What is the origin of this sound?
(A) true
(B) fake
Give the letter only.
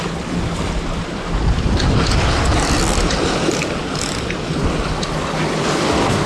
A